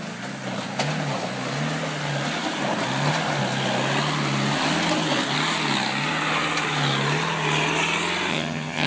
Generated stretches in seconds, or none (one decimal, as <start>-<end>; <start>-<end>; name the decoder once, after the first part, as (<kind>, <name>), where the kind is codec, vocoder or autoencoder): 8.3-8.9 (vocoder, HiFi-GAN)